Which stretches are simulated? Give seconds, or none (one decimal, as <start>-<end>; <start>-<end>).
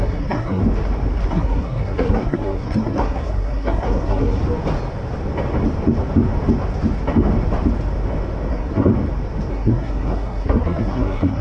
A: 0.0-0.6; 1.3-4.4; 8.5-8.9; 9.5-11.4